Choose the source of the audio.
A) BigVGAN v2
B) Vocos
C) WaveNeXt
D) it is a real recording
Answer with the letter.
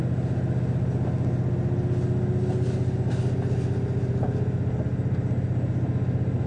D